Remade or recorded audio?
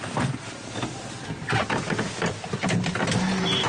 recorded